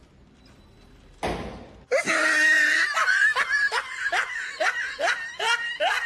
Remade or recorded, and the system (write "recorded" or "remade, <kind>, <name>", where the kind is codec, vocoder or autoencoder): recorded